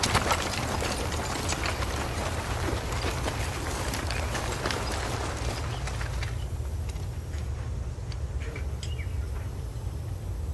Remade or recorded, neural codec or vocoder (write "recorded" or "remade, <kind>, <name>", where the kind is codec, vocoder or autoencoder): recorded